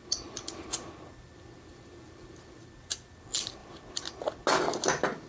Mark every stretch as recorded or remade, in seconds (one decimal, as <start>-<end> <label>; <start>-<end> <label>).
0.0-3.6 remade; 3.6-5.3 recorded